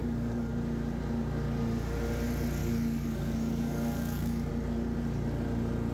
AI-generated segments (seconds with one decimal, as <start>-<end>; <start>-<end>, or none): 0.0-0.5; 2.6-4.5